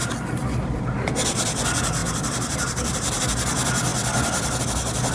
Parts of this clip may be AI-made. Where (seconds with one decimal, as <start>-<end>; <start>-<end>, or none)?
2.0-3.2